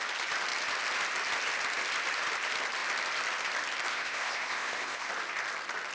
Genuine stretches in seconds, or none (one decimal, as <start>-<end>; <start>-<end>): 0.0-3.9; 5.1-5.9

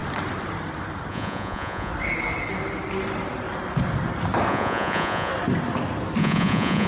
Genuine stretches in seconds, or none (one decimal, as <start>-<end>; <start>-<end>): 0.0-1.1; 1.9-4.5; 5.3-6.2

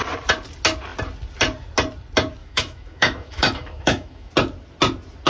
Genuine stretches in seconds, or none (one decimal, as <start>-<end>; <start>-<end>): 0.0-2.4; 4.3-5.3

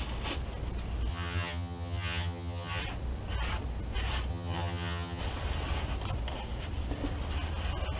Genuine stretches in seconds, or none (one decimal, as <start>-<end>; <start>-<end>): 0.0-1.1; 2.8-4.3; 5.2-8.0